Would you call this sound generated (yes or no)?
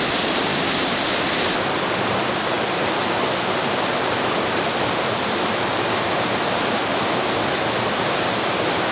no